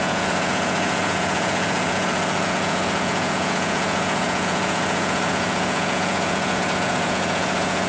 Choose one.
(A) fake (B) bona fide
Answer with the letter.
A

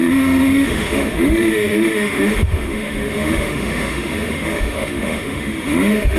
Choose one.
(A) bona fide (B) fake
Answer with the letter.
B